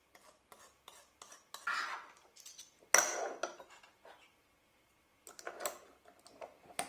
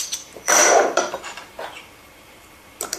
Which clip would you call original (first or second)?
first